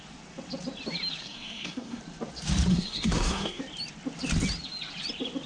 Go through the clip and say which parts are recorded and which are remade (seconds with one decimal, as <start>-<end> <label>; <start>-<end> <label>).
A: 0.0-1.2 recorded; 1.2-2.0 remade; 2.0-2.7 recorded; 2.7-3.6 remade; 3.6-5.5 recorded